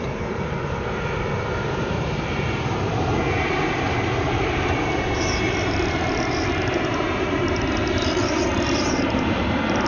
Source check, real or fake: fake